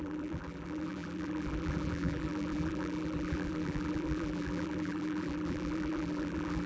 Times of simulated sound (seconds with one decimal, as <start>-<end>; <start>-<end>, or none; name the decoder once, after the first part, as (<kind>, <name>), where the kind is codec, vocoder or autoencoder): 0.0-6.7 (vocoder, BigVGAN v2)